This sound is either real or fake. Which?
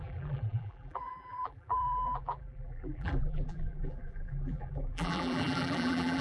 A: fake